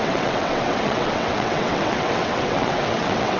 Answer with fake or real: fake